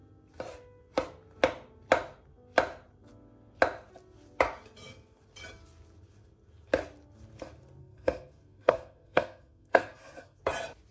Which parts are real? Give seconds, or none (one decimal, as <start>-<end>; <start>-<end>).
0.0-7.8; 10.4-10.9

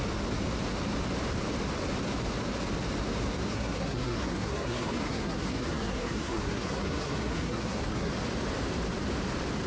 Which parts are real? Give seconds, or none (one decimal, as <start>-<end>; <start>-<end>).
0.0-3.5; 8.1-9.7